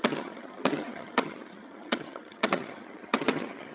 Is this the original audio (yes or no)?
no